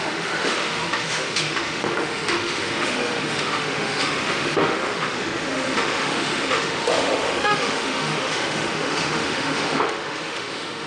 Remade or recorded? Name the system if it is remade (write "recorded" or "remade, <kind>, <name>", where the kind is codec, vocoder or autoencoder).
remade, autoencoder, DAC-VAE